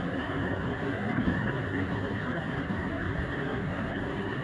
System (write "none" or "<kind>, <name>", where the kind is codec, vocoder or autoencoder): codec, SNAC